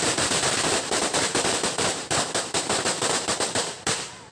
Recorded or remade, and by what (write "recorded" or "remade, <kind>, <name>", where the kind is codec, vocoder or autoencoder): remade, vocoder, BigVGAN v2